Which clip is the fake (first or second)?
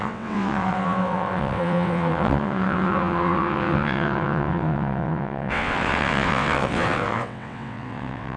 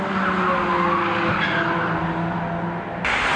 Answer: first